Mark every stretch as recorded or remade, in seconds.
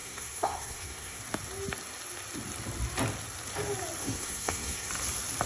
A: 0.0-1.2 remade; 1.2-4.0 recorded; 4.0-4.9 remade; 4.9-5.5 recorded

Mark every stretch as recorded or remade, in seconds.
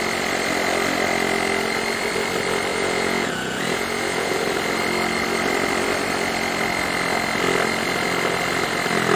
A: 0.0-2.7 recorded; 2.7-4.4 remade; 4.4-9.2 recorded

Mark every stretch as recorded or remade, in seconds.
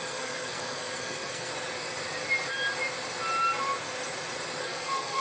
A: 0.0-1.5 remade; 1.5-4.6 recorded; 4.6-5.2 remade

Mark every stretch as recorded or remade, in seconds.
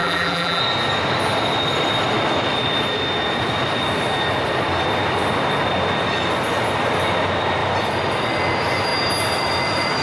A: 0.0-0.6 remade; 0.6-10.0 recorded